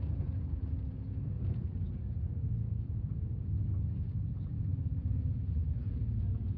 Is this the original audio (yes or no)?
no